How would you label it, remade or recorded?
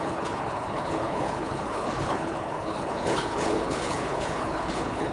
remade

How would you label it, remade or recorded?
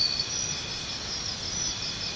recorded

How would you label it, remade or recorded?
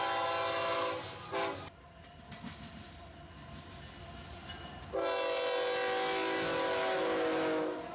recorded